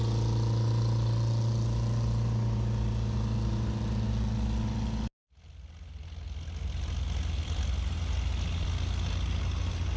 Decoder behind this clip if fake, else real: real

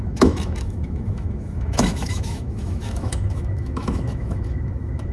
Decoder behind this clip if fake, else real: fake, autoencoder, DAC-VAE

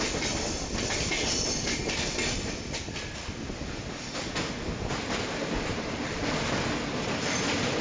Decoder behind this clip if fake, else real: real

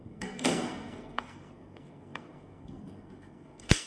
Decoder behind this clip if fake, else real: fake, codec, SNAC